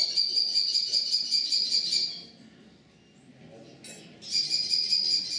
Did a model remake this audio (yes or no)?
no